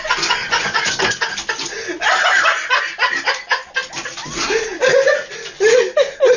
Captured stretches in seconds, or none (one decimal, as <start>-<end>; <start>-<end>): 0.0-0.4; 1.2-6.4